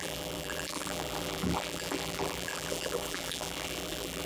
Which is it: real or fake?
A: fake